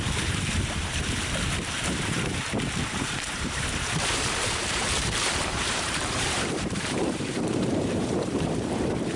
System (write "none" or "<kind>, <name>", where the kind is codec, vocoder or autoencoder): vocoder, BigVGAN v2